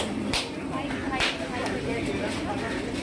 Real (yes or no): yes